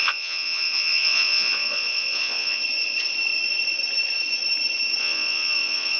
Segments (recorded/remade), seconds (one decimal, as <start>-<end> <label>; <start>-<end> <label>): 0.0-2.6 remade; 2.6-5.0 recorded; 5.0-6.0 remade